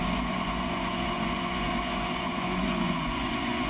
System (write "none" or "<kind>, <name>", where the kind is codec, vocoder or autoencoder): vocoder, Vocos